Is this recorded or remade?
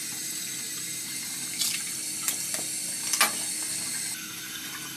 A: recorded